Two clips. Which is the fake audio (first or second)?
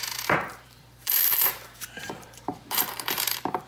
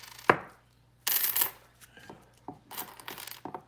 first